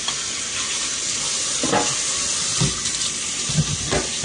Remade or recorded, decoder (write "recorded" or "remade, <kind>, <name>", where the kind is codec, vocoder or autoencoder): recorded